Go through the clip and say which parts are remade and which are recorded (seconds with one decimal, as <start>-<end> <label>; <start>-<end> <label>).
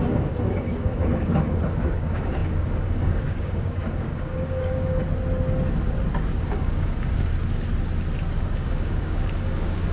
0.0-5.0 remade; 5.0-6.4 recorded; 6.4-7.3 remade; 7.3-8.4 recorded; 8.4-9.9 remade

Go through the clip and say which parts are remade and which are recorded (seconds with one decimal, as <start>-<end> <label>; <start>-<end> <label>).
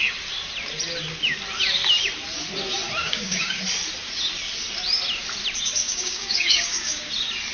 0.0-3.0 recorded; 3.0-3.6 remade; 3.6-5.8 recorded; 5.8-7.1 remade; 7.1-7.5 recorded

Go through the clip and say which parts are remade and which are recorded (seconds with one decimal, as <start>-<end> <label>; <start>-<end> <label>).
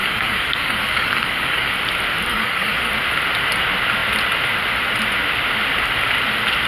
0.0-1.7 remade; 1.7-2.3 recorded; 2.3-2.9 remade; 2.9-6.7 recorded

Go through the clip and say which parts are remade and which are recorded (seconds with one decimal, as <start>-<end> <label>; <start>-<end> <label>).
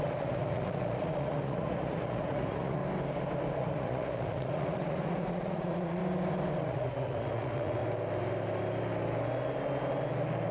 0.0-2.8 remade; 2.8-3.6 recorded; 3.6-6.0 remade; 6.0-6.6 recorded; 6.6-7.8 remade; 7.8-10.5 recorded